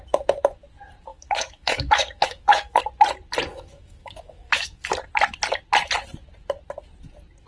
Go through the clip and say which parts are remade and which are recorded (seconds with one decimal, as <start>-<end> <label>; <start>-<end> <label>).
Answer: 0.0-1.1 recorded; 1.1-2.8 remade; 2.8-3.5 recorded; 3.5-4.9 remade; 4.9-7.5 recorded